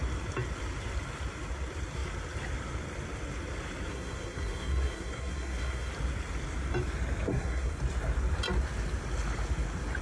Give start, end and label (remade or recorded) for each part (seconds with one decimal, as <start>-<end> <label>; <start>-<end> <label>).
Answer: 0.0-3.9 recorded; 3.9-5.9 remade; 5.9-7.3 recorded; 7.3-7.8 remade; 7.8-10.0 recorded